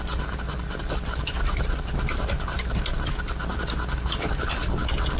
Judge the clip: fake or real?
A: real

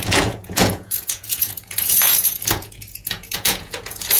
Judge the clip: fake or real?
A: fake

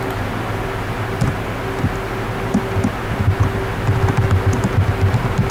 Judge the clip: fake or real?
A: real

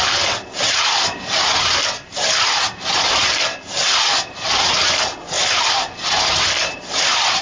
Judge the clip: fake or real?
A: real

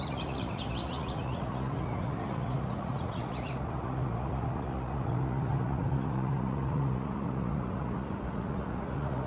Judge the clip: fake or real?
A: fake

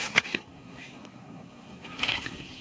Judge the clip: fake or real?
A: fake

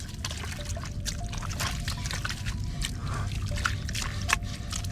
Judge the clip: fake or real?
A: real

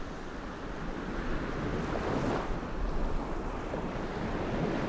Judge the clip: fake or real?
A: real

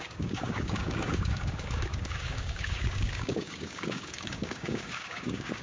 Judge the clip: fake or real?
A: fake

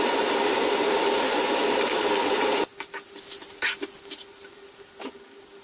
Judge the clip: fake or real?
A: real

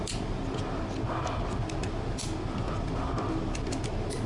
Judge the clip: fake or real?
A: real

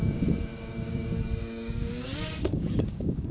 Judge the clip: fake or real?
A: fake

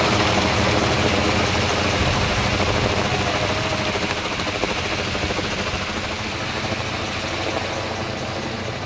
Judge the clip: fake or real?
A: real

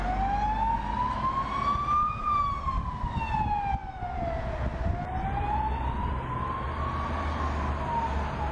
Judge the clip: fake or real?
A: real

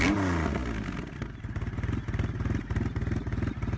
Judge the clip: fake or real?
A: real